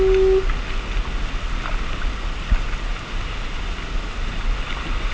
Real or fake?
real